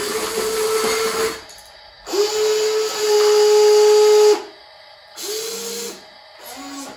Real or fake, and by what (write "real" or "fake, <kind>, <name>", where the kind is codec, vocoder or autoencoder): real